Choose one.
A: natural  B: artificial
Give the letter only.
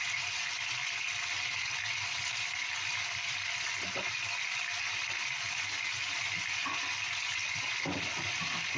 A